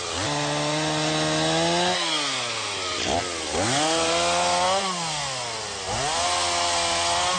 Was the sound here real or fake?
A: real